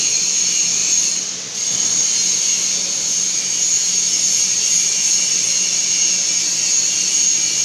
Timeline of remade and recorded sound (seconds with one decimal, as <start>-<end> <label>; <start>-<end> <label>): 0.0-7.6 recorded